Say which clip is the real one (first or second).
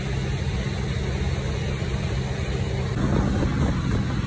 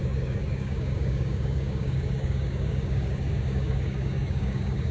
first